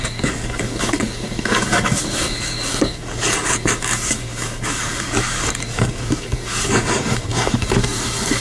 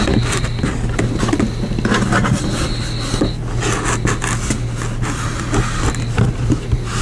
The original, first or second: second